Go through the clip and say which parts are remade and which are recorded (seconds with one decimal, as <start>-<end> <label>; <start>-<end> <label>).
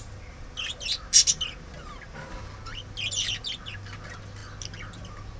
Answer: 0.0-5.4 recorded